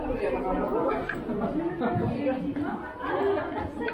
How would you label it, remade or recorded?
recorded